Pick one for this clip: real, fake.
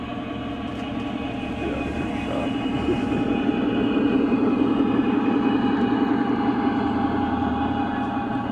fake